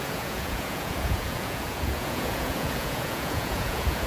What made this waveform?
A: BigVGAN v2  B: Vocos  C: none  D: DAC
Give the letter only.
B